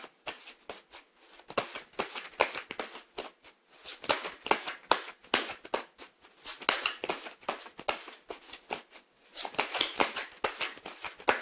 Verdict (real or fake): real